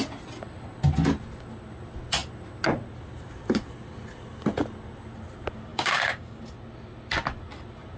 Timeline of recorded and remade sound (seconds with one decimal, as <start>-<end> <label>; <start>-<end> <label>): 0.0-5.7 recorded; 5.7-6.4 remade; 6.4-8.0 recorded